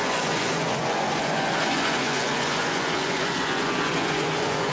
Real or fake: fake